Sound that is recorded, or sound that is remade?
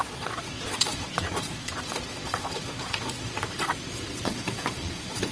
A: remade